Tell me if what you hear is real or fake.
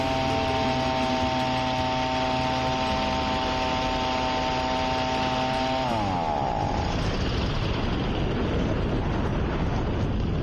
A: real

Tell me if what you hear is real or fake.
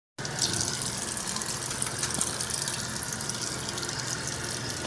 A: real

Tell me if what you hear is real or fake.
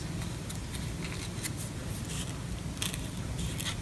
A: fake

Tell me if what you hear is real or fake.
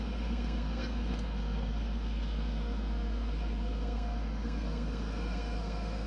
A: fake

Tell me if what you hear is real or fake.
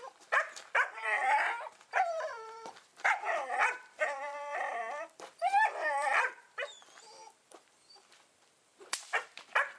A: fake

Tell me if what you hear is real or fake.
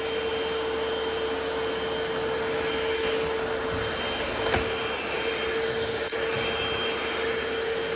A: real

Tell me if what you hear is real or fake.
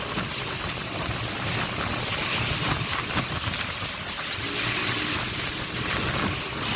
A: real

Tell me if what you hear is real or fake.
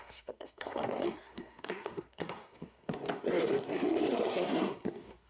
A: fake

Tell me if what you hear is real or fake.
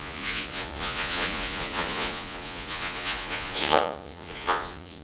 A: fake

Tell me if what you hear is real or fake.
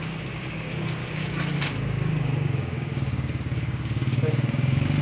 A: fake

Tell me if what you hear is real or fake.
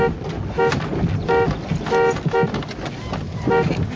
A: real